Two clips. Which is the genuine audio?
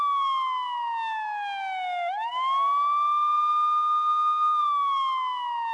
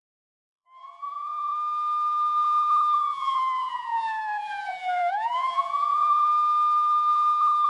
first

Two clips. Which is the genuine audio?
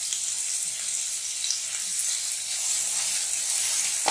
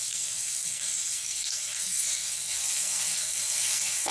first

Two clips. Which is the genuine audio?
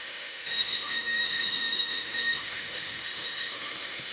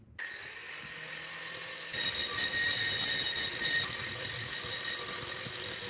second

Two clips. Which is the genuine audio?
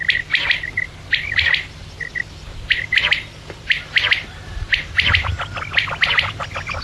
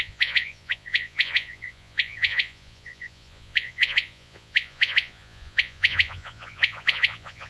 first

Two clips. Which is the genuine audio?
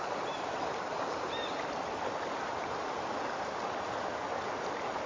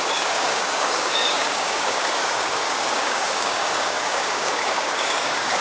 first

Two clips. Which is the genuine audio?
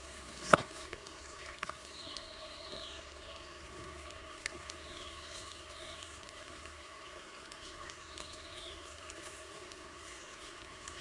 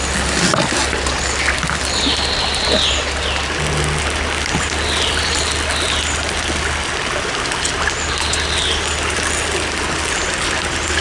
second